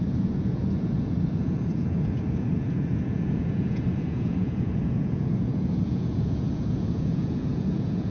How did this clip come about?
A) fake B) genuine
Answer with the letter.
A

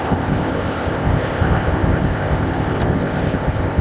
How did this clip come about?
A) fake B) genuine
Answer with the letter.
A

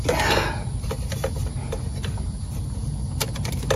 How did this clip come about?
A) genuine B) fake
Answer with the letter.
A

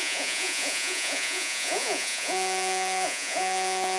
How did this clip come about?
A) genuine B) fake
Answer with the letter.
B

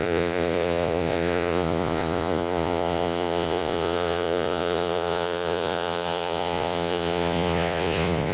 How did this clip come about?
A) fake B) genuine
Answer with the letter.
A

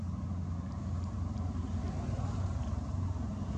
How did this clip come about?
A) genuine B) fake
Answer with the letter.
A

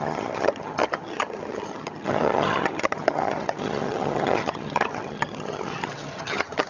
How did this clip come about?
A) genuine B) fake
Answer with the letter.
B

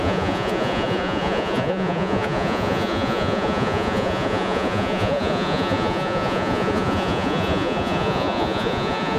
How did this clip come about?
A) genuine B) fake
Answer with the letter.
B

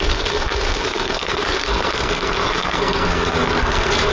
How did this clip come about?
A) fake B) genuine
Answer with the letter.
A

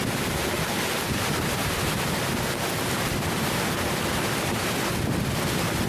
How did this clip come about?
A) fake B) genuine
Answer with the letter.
B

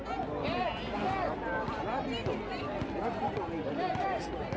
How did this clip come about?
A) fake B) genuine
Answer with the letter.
B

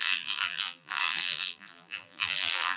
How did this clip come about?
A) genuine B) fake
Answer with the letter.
B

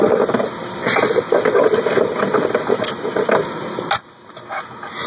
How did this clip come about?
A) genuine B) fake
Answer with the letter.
A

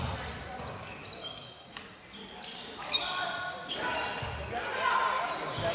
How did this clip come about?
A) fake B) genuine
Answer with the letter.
B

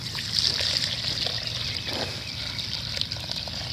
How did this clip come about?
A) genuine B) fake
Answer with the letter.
A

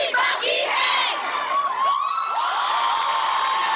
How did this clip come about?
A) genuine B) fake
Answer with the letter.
A